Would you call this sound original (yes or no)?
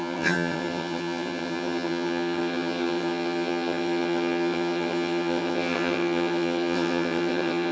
no